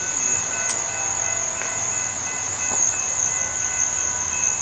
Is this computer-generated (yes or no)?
no